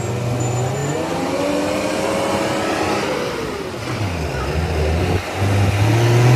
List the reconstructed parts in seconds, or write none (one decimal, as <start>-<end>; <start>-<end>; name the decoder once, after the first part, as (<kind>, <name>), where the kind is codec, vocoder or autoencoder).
none